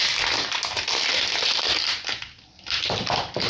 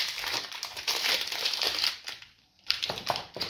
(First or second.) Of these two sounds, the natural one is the first